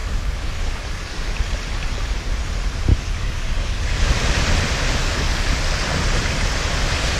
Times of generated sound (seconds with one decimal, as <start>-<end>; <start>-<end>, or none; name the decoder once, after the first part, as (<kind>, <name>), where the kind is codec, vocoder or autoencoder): 0.0-1.3 (codec, DAC); 2.9-4.0; 5.0-5.6